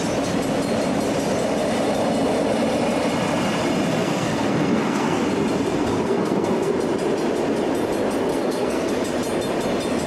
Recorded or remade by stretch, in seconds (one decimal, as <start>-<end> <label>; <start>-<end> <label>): 0.0-4.0 recorded; 4.0-5.2 remade; 5.2-5.7 recorded; 5.7-6.7 remade; 6.7-8.3 recorded; 8.3-8.9 remade; 8.9-10.1 recorded